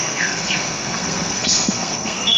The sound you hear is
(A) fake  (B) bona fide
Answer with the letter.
A